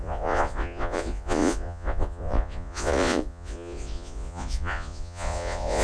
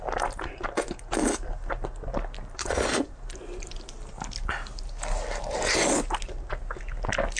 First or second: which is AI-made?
first